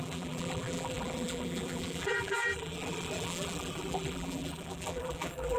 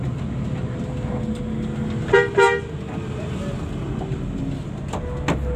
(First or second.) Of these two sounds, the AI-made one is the first